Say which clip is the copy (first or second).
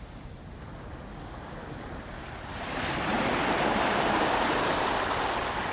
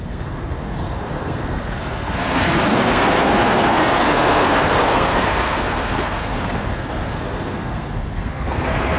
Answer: second